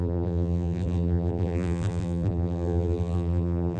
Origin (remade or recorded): remade